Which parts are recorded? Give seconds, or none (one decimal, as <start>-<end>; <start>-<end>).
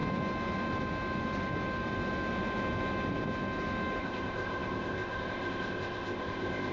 0.0-4.0